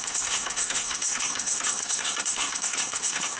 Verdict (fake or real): fake